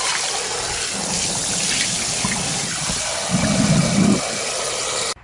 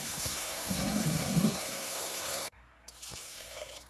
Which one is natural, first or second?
first